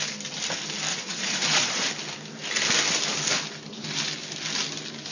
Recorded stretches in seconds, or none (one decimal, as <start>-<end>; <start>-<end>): 0.0-0.9; 1.9-5.1